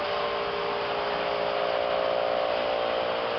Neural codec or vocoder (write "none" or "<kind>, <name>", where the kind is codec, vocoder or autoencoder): none